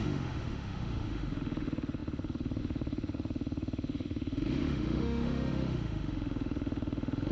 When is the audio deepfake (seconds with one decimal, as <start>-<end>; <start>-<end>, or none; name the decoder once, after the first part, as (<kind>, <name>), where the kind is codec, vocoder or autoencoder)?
0.0-7.3 (autoencoder, DAC-VAE)